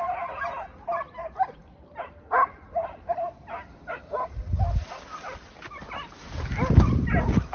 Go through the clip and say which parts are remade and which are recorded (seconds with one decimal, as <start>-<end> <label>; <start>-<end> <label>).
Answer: 0.0-7.5 recorded